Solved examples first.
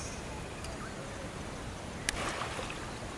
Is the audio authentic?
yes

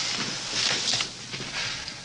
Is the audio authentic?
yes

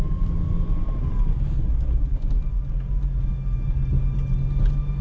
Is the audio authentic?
yes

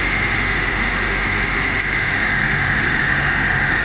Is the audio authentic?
no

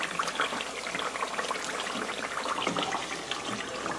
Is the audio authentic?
yes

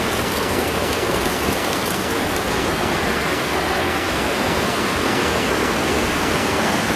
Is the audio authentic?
no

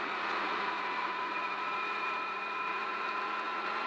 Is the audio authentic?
no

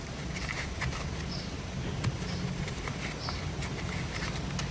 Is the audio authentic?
yes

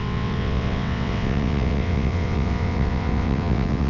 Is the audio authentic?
no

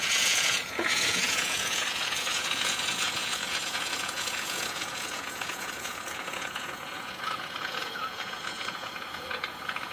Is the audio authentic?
no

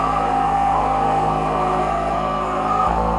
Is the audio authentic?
no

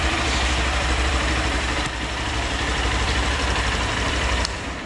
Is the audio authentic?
no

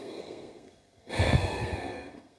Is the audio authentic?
no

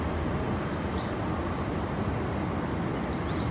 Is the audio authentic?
yes